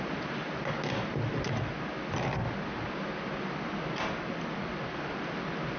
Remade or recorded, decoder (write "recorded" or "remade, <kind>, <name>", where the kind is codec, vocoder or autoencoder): recorded